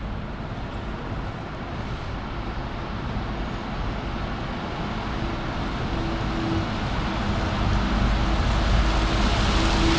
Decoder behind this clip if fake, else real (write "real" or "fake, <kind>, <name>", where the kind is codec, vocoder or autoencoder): real